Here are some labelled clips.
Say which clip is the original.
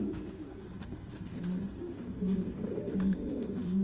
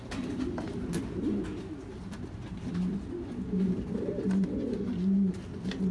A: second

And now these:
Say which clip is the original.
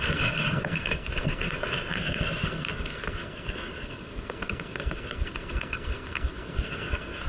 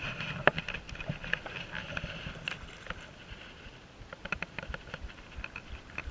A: second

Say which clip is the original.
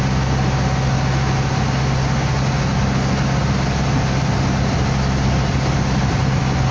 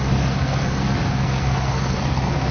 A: first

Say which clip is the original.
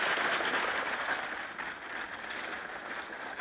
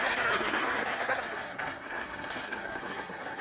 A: first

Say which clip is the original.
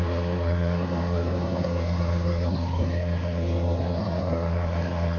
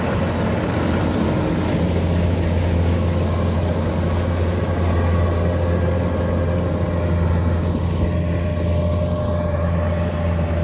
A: second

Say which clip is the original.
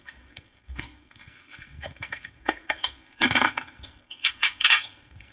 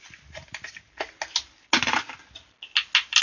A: second